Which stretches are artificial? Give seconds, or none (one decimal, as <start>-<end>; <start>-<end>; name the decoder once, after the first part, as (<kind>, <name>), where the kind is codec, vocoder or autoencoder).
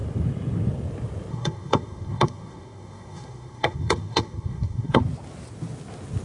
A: 1.3-5.0 (codec, SNAC)